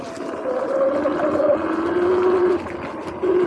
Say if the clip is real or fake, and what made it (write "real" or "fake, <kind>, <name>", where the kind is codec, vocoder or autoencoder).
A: real